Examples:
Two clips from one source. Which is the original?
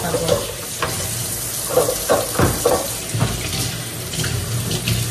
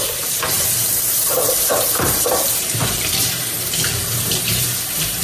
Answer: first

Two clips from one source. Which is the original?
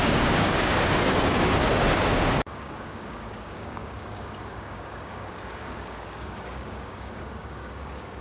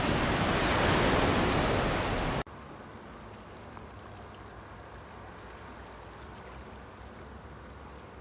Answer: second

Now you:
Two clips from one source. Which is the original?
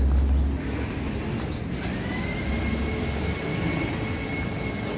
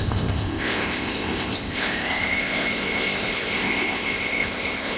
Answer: first